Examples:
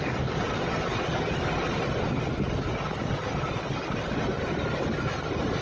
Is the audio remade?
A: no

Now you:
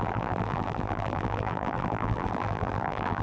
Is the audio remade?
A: yes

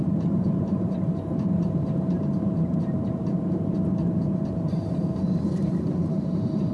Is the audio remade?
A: yes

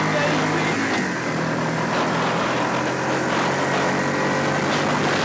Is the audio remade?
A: no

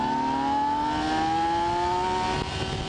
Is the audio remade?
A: no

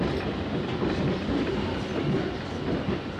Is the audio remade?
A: no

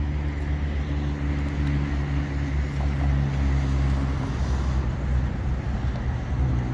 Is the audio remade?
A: no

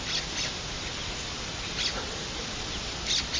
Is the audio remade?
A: no